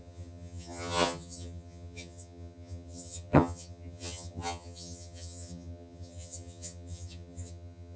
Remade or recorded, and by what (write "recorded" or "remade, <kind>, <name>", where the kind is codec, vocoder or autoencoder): remade, vocoder, HiFi-GAN